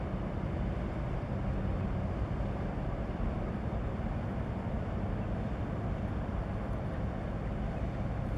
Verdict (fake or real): fake